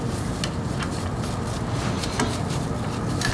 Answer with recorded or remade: recorded